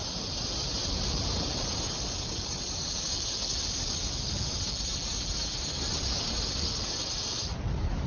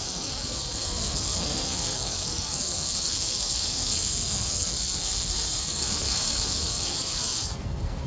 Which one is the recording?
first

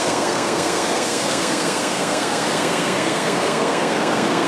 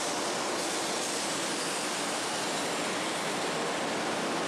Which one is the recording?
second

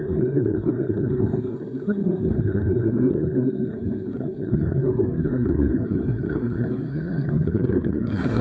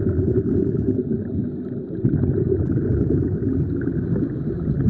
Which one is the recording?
second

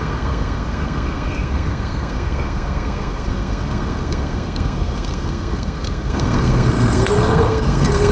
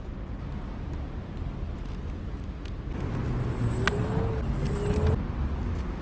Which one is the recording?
second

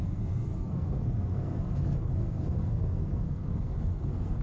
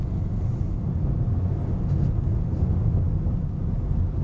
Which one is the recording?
second